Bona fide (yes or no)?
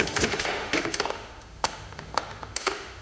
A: no